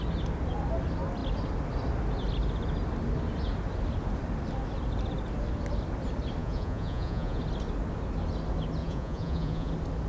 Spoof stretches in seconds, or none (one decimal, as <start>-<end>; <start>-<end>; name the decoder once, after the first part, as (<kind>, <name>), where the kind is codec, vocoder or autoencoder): 6.4-7.4 (vocoder, Vocos); 8.8-9.7

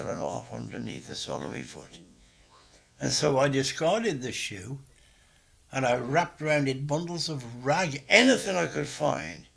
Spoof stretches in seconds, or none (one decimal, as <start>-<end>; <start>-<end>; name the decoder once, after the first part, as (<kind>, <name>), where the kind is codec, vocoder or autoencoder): 0.0-3.3 (vocoder, Vocos); 8.0-9.6

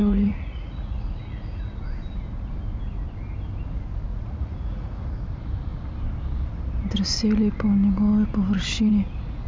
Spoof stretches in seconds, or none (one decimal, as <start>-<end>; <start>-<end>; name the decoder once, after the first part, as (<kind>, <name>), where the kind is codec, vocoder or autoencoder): 0.0-1.8 (vocoder, Vocos); 4.1-5.1

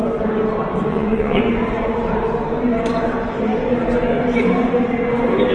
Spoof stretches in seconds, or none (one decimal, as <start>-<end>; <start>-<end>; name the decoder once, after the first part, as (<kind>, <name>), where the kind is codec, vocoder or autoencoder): 0.9-1.4 (vocoder, Vocos)

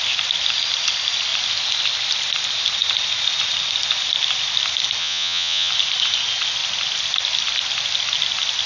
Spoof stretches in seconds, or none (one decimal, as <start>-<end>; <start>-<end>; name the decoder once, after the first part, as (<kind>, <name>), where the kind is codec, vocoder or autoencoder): 5.0-5.7 (vocoder, Vocos)